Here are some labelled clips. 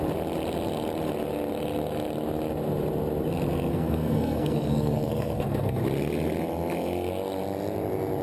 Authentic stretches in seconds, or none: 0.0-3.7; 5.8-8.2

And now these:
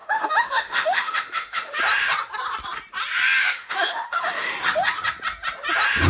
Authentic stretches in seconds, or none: 1.8-3.4; 4.5-6.1

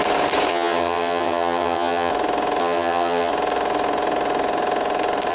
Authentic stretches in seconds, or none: 0.0-0.5; 2.1-2.6; 3.3-5.3

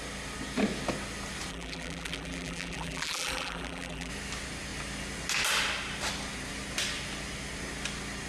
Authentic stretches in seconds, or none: 0.0-1.5; 4.1-8.3

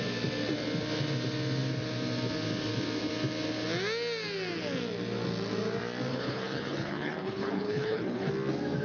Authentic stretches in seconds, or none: 0.0-6.1; 8.3-8.8

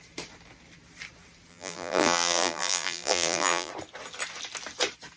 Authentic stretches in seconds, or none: 0.0-1.5; 3.7-5.2

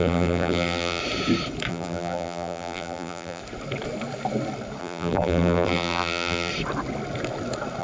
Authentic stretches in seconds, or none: 1.0-1.7; 3.4-4.8; 6.5-7.8

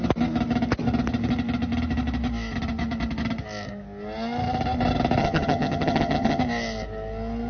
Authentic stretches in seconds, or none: 0.0-5.2; 6.4-7.5